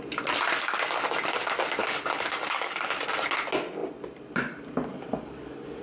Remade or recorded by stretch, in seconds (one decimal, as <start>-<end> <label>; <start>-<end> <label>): 0.0-1.8 recorded; 1.8-2.9 remade; 2.9-4.9 recorded; 4.9-5.8 remade

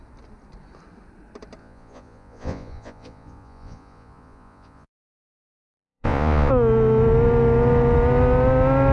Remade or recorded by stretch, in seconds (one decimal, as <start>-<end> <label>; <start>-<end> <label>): 0.0-1.6 recorded; 1.6-6.5 remade; 6.5-8.9 recorded

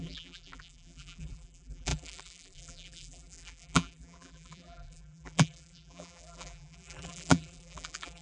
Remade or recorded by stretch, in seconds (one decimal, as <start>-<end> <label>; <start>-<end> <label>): 0.0-8.2 remade

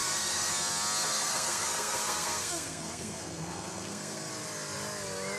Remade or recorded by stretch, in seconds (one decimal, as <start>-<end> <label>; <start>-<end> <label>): 0.0-0.5 remade; 0.5-1.1 recorded; 1.1-4.3 remade; 4.3-5.4 recorded

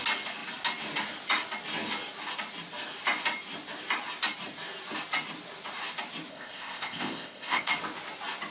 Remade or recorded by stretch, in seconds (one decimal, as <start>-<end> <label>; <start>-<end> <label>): 0.0-6.3 recorded; 6.3-7.7 remade; 7.7-8.5 recorded

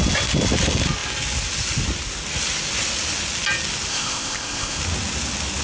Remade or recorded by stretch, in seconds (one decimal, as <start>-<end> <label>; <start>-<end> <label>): 0.0-3.9 recorded; 3.9-4.8 remade; 4.8-5.6 recorded

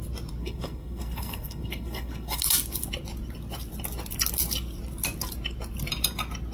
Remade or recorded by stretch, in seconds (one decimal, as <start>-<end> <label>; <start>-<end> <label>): 0.0-0.4 recorded; 0.4-2.4 remade; 2.4-6.5 recorded

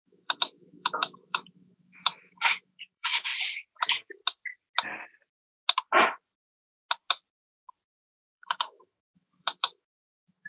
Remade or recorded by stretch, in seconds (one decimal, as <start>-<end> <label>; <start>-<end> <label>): 0.0-3.3 remade; 3.3-3.8 recorded; 3.8-4.2 remade; 4.2-7.9 recorded; 7.9-10.5 remade